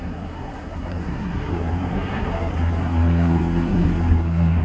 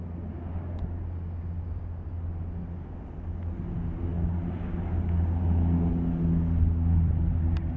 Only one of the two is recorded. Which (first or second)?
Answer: second